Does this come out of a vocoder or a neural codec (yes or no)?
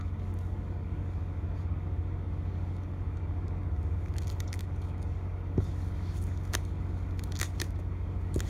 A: yes